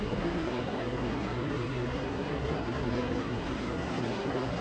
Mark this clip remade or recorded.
remade